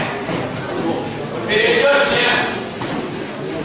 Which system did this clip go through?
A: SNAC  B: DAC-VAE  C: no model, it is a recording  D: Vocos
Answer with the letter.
C